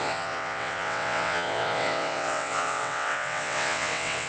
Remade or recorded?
remade